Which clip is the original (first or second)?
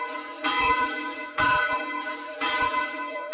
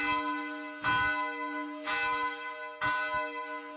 second